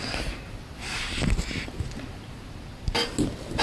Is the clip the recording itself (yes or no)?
yes